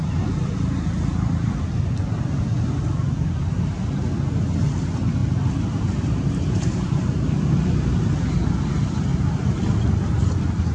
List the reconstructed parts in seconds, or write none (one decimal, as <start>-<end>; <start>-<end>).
none